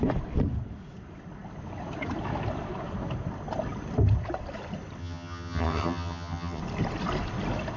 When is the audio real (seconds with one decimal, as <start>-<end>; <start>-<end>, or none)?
0.0-5.0; 6.6-7.8